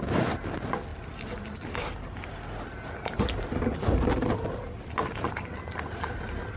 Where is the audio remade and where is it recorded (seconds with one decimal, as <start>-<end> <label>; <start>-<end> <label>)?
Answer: 0.0-6.6 recorded